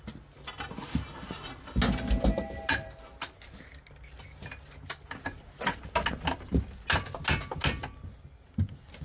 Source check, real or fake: real